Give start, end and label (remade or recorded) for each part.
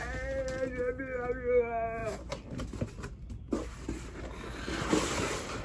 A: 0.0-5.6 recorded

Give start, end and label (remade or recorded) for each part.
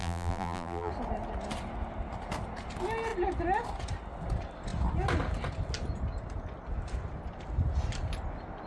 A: 0.0-0.9 remade; 0.9-8.7 recorded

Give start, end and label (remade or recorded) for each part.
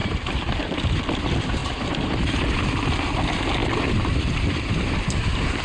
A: 0.0-1.0 remade; 1.0-1.6 recorded; 1.6-2.4 remade; 2.4-3.6 recorded; 3.6-4.8 remade; 4.8-5.6 recorded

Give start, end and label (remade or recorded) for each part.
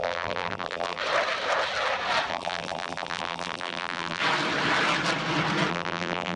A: 0.0-1.0 remade; 1.0-2.3 recorded; 2.3-4.2 remade; 4.2-5.7 recorded; 5.7-6.4 remade